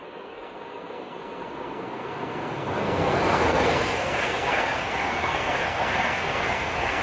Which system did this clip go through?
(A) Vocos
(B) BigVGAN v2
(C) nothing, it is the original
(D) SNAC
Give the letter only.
D